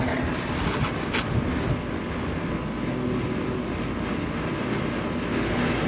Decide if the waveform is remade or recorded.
recorded